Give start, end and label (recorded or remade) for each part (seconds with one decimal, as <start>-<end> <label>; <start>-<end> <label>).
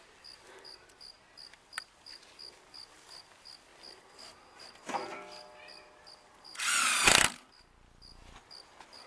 0.0-6.5 recorded; 6.5-7.5 remade; 7.5-9.1 recorded